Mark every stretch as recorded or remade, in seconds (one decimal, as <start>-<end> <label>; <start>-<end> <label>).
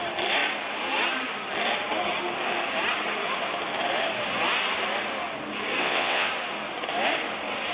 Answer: 0.0-5.8 recorded; 5.8-6.3 remade; 6.3-7.7 recorded